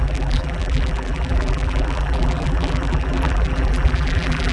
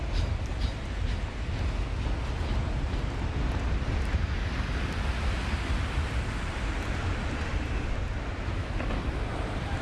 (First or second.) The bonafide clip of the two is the second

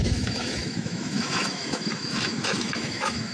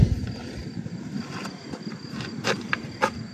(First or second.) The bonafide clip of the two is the second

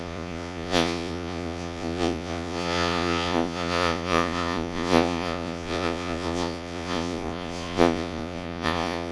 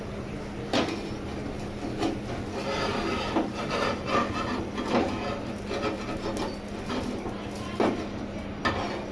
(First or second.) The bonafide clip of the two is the second